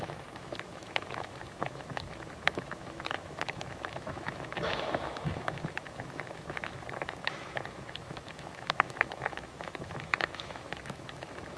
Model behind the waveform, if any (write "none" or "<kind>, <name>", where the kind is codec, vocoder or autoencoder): autoencoder, DAC-VAE